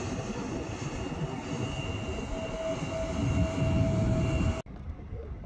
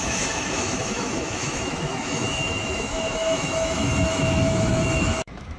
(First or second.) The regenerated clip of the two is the second